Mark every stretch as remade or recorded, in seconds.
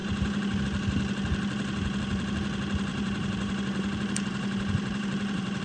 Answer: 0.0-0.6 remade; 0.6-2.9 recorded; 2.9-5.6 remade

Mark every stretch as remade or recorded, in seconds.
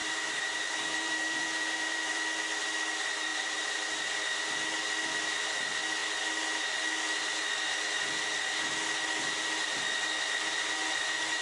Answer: 0.0-2.2 remade; 2.2-3.3 recorded; 3.3-3.9 remade; 3.9-11.4 recorded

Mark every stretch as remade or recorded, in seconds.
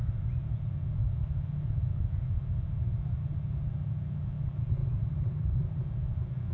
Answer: 0.0-4.8 recorded; 4.8-5.8 remade; 5.8-6.5 recorded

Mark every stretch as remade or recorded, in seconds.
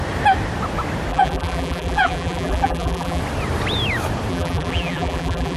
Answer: 0.0-1.1 recorded; 1.1-3.2 remade; 3.2-4.3 recorded; 4.3-5.6 remade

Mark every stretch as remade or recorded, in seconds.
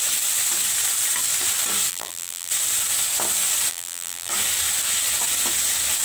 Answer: 0.0-1.9 recorded; 1.9-2.5 remade; 2.5-3.7 recorded; 3.7-4.3 remade; 4.3-6.0 recorded